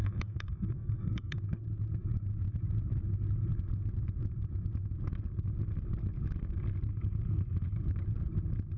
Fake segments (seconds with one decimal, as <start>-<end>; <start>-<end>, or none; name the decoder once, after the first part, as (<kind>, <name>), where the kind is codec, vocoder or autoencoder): 0.0-1.4 (codec, SNAC)